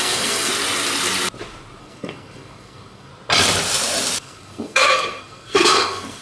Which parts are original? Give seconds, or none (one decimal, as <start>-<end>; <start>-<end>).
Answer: 0.5-1.8; 3.1-4.2